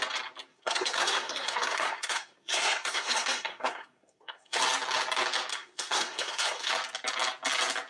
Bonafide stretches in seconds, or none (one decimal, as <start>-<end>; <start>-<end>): 0.0-0.5; 4.6-5.5; 6.7-7.9